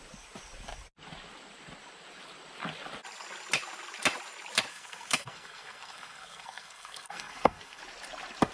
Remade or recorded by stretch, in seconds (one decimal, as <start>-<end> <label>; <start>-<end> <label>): 0.0-4.7 recorded; 4.7-7.8 remade; 7.8-8.5 recorded